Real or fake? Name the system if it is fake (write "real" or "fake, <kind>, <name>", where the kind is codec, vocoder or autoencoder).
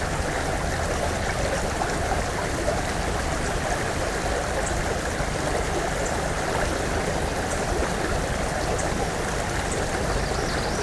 real